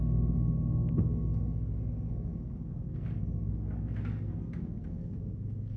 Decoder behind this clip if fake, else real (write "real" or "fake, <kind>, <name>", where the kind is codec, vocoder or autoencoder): fake, codec, SNAC